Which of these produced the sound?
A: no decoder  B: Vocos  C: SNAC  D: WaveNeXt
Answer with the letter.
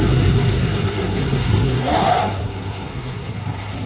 C